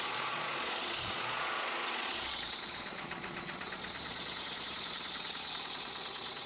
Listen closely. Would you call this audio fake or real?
fake